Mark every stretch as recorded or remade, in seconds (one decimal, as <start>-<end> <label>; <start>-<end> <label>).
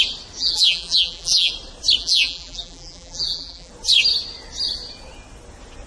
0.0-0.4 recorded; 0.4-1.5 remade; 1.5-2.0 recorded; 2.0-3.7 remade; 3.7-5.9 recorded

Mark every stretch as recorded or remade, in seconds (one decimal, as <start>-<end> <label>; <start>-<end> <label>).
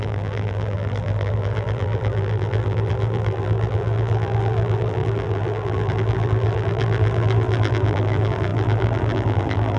0.0-9.8 remade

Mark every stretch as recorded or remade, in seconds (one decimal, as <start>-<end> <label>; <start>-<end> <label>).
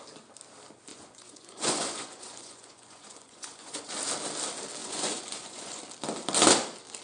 0.0-0.9 recorded; 0.9-3.9 remade; 3.9-4.8 recorded; 4.8-5.8 remade; 5.8-7.0 recorded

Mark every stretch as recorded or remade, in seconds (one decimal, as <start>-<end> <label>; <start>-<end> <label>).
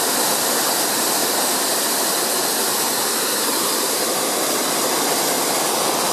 0.0-1.2 recorded; 1.2-4.9 remade; 4.9-6.1 recorded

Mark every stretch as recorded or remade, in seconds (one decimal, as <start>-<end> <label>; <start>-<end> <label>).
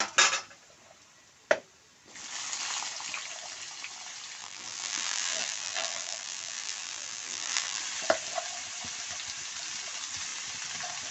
0.0-4.4 recorded; 4.4-7.8 remade; 7.8-11.1 recorded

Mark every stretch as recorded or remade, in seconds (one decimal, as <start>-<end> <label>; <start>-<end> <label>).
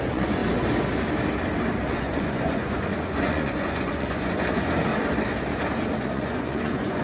0.0-0.4 remade; 0.4-1.9 recorded; 1.9-4.9 remade; 4.9-6.0 recorded; 6.0-7.0 remade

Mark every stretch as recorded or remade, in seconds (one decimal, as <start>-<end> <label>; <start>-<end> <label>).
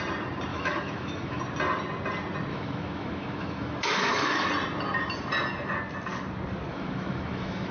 0.0-0.5 recorded; 0.5-1.4 remade; 1.4-2.5 recorded; 2.5-4.5 remade; 4.5-6.7 recorded; 6.7-7.7 remade